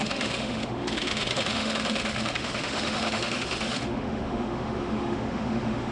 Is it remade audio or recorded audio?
remade